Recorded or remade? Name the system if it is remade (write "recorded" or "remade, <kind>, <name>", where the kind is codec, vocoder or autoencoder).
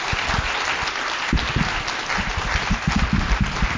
recorded